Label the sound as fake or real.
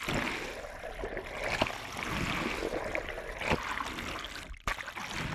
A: real